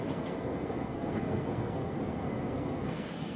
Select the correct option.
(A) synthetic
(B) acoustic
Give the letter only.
A